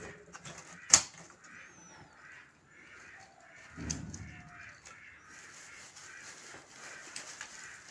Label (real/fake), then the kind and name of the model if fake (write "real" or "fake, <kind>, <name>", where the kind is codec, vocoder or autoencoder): real